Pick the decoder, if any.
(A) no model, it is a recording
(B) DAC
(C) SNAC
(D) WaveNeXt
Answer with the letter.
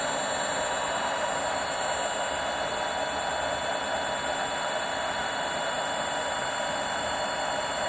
A